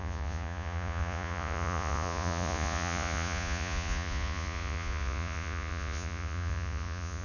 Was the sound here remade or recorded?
remade